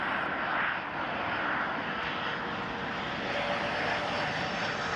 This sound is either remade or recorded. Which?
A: recorded